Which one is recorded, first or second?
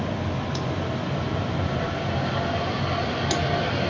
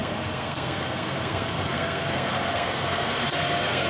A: first